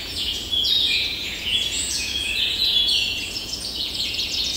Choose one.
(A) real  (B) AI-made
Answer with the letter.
B